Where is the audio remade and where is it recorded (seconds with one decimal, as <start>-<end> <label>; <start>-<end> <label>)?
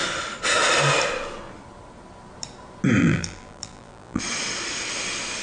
0.0-3.0 recorded; 3.0-4.2 remade; 4.2-5.4 recorded